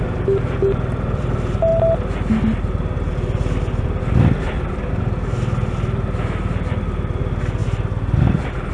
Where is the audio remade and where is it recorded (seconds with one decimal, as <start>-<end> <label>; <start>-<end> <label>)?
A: 0.0-8.7 recorded